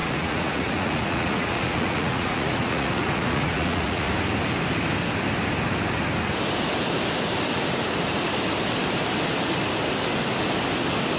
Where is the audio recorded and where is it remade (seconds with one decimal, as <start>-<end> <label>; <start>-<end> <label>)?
0.0-4.1 remade; 4.1-11.2 recorded